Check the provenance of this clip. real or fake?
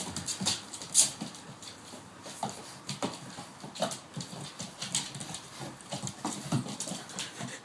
real